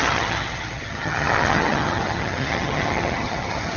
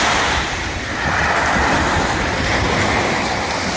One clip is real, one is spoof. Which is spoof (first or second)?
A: first